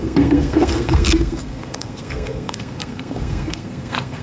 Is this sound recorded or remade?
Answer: remade